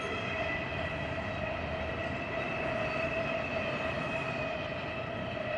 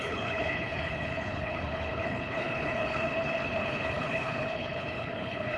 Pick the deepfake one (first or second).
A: second